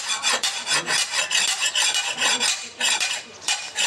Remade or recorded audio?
remade